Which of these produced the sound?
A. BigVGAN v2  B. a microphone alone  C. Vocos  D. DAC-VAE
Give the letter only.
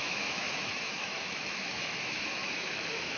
D